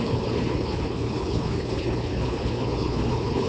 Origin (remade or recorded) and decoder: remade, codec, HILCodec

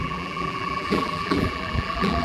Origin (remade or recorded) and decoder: remade, vocoder, BigVGAN v2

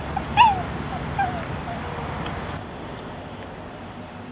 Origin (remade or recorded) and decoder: remade, vocoder, BigVGAN v2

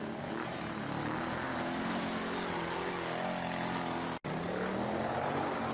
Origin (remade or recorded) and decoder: recorded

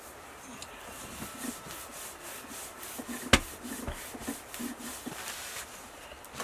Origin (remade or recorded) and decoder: recorded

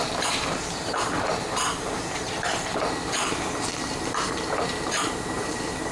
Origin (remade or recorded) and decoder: remade, vocoder, BigVGAN v2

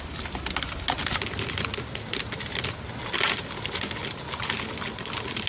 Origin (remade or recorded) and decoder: recorded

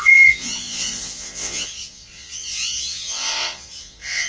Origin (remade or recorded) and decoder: remade, vocoder, Vocos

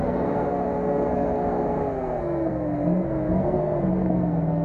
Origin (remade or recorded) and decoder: remade, codec, SNAC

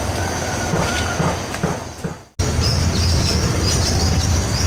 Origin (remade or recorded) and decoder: recorded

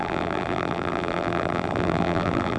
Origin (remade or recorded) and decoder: remade, vocoder, BigVGAN v2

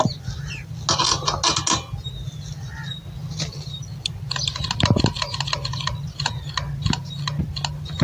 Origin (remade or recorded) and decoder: recorded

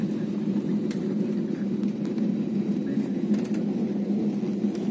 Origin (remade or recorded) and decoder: recorded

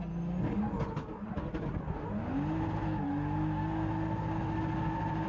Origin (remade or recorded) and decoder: recorded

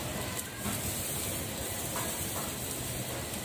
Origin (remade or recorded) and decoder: recorded